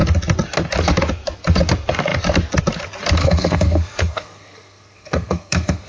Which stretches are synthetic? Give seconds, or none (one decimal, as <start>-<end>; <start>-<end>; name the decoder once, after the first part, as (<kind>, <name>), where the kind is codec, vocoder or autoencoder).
3.2-5.9 (codec, SNAC)